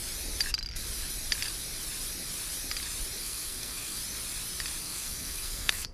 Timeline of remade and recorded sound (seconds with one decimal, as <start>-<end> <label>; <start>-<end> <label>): 0.0-3.2 recorded; 3.2-4.0 remade; 4.0-4.8 recorded; 4.8-5.9 remade